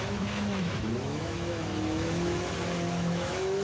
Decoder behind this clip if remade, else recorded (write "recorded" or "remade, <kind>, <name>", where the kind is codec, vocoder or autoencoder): remade, autoencoder, DAC-VAE